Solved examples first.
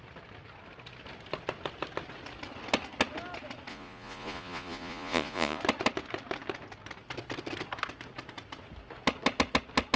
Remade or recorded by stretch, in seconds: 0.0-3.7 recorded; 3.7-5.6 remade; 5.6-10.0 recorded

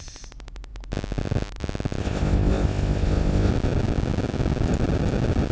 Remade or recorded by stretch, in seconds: 0.0-2.0 recorded; 2.0-3.5 remade; 3.5-5.5 recorded